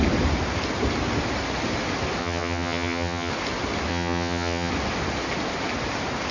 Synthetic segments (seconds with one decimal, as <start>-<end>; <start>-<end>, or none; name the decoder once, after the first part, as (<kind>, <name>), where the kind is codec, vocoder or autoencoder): 2.2-3.3 (vocoder, HiFi-GAN); 3.9-4.7